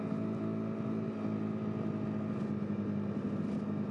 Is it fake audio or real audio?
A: real